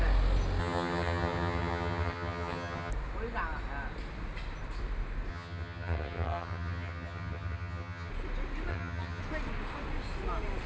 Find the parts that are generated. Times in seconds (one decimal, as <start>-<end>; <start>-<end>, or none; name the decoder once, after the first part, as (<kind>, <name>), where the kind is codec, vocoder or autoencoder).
0.6-2.9 (vocoder, HiFi-GAN); 5.3-8.1; 8.7-9.2